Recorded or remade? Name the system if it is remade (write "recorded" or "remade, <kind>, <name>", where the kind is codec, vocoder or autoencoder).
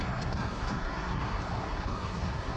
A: remade, codec, SNAC